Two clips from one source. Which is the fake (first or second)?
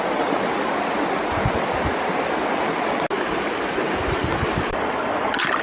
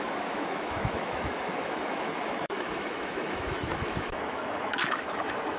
second